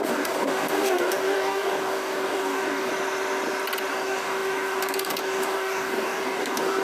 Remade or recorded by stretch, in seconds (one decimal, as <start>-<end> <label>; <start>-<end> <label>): 0.0-2.9 remade; 2.9-3.9 recorded; 3.9-6.8 remade